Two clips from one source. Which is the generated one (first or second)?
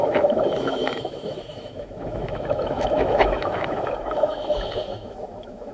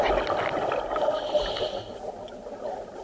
first